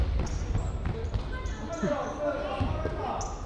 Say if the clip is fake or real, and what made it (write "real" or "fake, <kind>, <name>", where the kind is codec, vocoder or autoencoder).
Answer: real